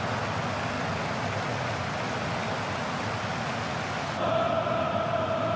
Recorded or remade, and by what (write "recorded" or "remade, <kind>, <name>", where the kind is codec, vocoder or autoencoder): recorded